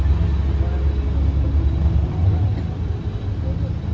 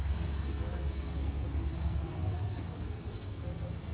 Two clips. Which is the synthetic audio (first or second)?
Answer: second